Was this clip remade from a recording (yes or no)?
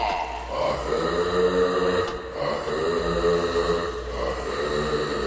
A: no